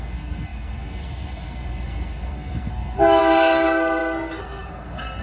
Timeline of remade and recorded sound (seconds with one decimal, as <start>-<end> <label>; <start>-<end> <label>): 0.0-5.2 remade